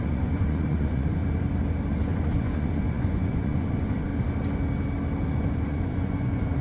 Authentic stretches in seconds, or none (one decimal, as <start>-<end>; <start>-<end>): 1.2-1.9; 4.1-5.2